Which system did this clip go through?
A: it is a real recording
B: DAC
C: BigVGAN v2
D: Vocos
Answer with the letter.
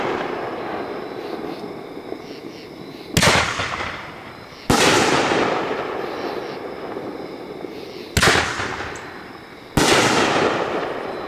A